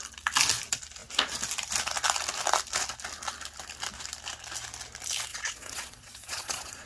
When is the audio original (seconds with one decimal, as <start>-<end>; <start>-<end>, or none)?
0.0-5.3